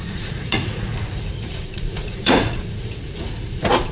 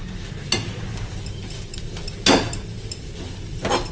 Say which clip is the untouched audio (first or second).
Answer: second